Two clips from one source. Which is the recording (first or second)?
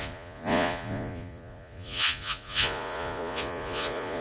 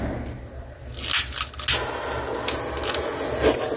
second